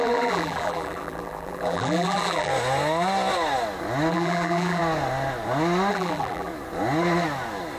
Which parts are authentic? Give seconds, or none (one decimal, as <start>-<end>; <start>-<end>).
2.5-4.1; 4.8-5.9; 6.5-7.8